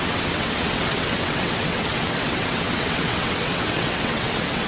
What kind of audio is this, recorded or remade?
remade